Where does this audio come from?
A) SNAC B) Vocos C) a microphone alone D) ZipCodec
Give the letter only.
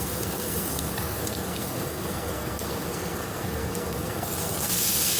A